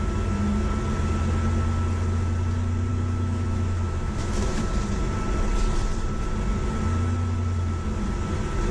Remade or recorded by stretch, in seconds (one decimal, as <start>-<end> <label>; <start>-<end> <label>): 0.0-2.9 recorded; 2.9-4.7 remade; 4.7-8.7 recorded